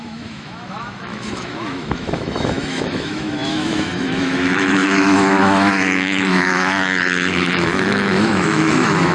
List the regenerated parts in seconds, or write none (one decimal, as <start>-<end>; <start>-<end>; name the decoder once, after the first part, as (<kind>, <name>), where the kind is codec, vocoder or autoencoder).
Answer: 0.0-9.1 (autoencoder, DAC-VAE)